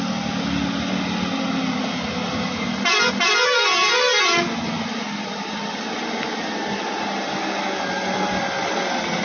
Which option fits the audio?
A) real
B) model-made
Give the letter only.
A